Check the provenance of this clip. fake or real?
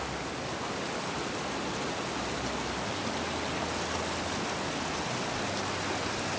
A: real